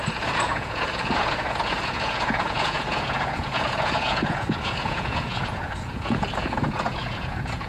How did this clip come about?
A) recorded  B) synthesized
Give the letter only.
B